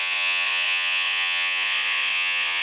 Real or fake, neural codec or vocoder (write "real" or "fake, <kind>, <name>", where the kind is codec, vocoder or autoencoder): fake, vocoder, Vocos